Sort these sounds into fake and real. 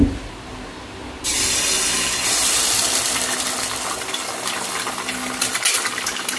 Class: real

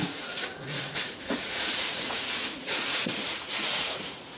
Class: fake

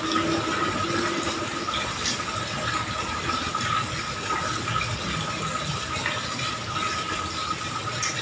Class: real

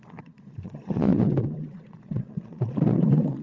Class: fake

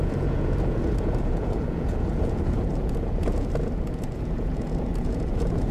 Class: fake